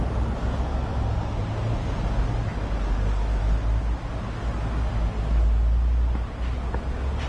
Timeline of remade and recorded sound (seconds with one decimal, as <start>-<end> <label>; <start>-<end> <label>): 0.0-7.3 recorded